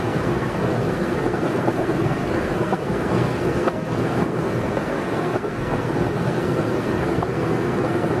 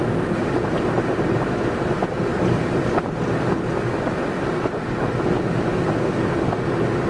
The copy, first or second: first